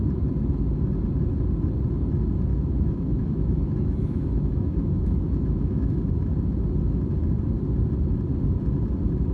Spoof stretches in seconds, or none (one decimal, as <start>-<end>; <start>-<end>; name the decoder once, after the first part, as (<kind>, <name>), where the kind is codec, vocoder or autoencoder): 2.5-6.3 (autoencoder, DAC-VAE)